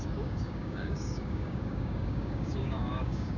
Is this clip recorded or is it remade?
remade